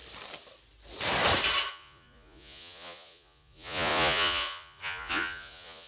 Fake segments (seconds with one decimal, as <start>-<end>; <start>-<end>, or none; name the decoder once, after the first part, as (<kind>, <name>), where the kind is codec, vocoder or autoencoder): 1.7-5.9 (vocoder, Vocos)